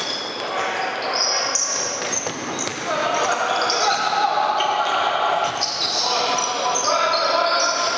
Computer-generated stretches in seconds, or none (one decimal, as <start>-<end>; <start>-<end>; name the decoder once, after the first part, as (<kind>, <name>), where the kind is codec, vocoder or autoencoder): none

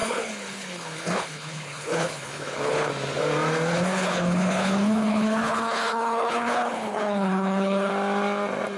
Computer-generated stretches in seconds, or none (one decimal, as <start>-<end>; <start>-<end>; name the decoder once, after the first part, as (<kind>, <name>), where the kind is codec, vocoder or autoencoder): 0.0-2.9 (codec, HILCodec); 3.7-7.9